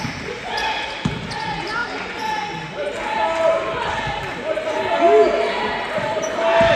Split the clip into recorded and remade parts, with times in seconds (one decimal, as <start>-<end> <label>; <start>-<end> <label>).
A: 0.0-6.8 recorded